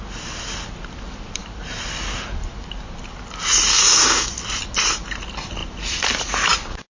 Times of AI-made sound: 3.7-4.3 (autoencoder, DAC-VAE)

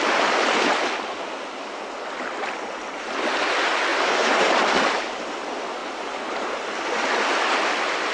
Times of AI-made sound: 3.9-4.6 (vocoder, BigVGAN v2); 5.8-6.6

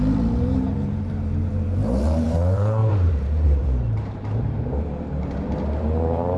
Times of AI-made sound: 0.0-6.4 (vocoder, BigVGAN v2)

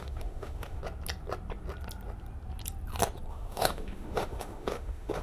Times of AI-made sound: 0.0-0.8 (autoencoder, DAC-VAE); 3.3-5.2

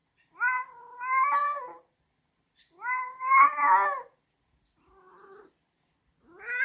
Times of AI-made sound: 0.0-0.8 (vocoder, BigVGAN v2); 1.4-5.4

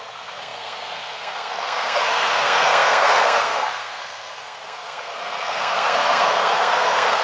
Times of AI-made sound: 0.0-7.2 (codec, SNAC)